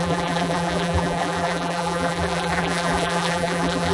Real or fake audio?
fake